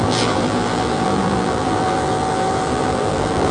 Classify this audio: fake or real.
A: fake